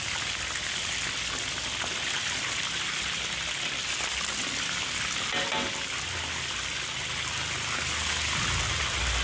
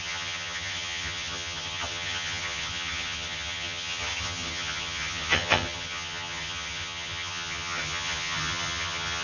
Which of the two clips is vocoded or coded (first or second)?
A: second